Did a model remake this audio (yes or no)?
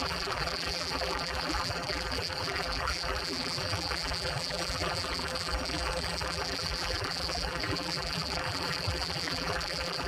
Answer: yes